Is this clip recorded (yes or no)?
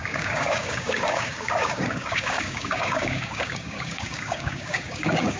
no